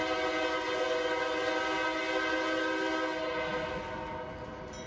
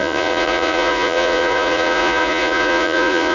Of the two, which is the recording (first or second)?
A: first